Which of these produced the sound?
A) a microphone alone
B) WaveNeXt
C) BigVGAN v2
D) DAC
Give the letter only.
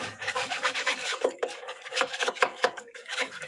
D